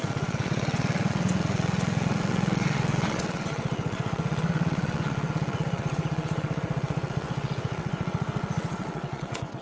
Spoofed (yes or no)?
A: yes